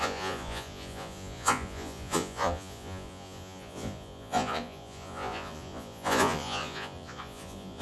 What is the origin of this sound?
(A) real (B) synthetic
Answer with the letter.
B